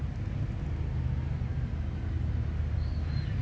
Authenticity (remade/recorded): recorded